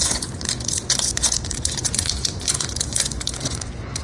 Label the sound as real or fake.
fake